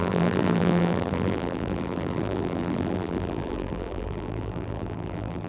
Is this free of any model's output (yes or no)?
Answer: no